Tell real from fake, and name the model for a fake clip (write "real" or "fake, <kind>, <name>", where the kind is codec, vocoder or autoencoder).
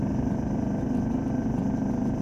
real